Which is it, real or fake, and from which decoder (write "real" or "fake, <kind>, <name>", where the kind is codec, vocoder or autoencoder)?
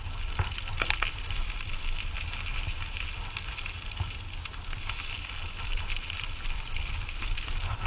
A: real